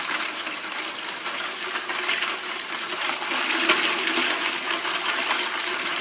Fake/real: real